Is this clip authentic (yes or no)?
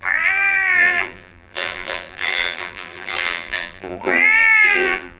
no